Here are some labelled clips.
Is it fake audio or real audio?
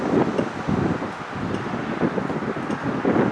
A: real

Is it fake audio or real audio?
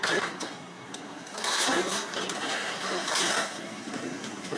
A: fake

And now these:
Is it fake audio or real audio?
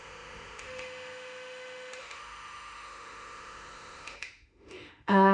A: fake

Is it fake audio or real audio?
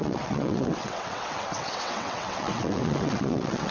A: fake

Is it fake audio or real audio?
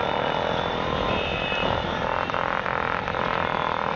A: real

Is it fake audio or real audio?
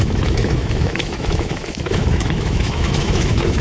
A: fake